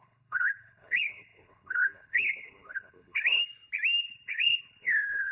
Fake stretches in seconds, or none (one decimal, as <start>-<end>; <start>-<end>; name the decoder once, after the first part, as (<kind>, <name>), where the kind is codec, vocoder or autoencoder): 0.0-3.4 (codec, HILCodec); 4.0-5.3